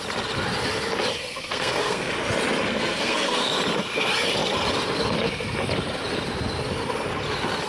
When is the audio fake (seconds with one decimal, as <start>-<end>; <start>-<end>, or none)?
1.3-2.1; 2.7-3.5